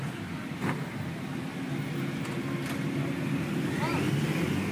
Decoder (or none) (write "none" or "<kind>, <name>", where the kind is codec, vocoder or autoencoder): none